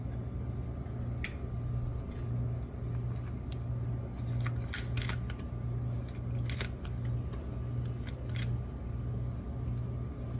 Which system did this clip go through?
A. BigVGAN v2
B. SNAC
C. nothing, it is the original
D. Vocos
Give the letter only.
C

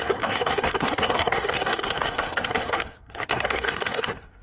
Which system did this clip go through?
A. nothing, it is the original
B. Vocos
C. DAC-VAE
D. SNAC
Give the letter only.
D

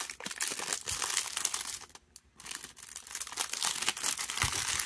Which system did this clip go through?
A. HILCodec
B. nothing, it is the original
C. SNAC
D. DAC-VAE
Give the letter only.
B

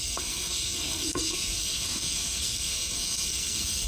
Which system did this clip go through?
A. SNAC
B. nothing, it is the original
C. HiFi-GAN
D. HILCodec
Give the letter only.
A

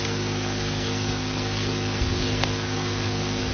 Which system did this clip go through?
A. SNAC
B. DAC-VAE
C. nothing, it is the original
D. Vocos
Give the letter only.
A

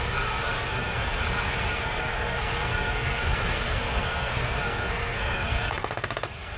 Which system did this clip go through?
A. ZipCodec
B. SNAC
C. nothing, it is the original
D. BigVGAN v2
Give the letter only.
B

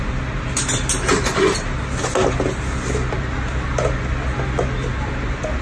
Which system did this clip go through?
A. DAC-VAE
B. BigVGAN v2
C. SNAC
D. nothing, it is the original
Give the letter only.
D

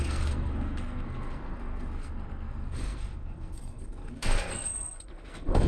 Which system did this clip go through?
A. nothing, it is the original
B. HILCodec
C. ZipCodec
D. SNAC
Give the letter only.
D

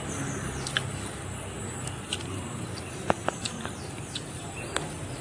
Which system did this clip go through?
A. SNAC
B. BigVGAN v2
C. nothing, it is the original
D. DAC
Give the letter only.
C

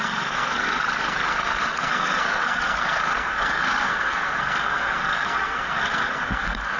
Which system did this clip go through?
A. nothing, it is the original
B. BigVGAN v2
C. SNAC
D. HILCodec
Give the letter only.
C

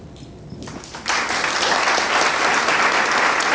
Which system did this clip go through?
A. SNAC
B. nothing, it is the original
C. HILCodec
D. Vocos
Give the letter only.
B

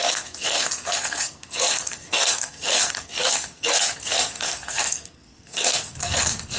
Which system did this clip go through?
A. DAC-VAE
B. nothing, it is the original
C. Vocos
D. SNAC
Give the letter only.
D